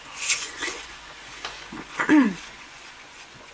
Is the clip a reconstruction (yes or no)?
yes